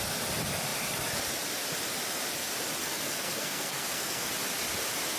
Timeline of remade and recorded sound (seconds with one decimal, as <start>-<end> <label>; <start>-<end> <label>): 0.0-2.8 recorded; 2.8-4.3 remade; 4.3-5.2 recorded